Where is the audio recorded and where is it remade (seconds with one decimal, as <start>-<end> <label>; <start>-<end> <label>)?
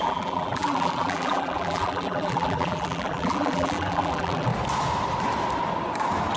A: 0.0-4.5 remade; 4.5-6.4 recorded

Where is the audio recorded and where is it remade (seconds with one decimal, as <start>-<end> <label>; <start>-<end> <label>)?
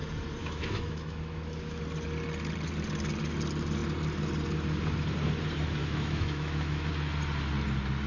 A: 0.0-0.4 recorded; 0.4-1.8 remade; 1.8-5.8 recorded; 5.8-6.9 remade; 6.9-8.1 recorded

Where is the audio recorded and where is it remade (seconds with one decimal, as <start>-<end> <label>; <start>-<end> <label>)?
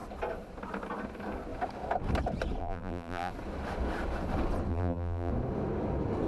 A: 0.0-2.6 recorded; 2.6-3.3 remade; 3.3-4.7 recorded; 4.7-5.3 remade; 5.3-6.3 recorded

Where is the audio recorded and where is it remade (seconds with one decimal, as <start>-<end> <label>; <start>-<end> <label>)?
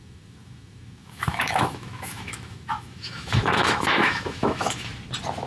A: 0.0-4.9 remade; 4.9-5.5 recorded